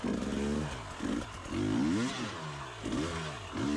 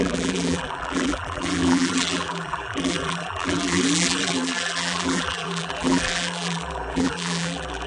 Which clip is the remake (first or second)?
second